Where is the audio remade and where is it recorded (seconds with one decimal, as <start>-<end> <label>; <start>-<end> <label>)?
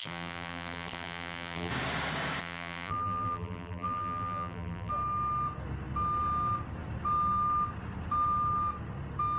0.0-1.7 remade; 1.7-2.4 recorded; 2.4-4.9 remade; 4.9-9.4 recorded